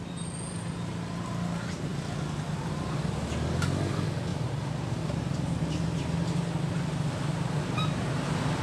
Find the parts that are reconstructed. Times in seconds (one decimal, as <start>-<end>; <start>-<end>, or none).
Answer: 4.3-5.6